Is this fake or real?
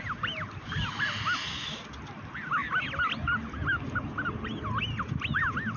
real